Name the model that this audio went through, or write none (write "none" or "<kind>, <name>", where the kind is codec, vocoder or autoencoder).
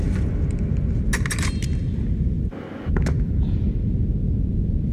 none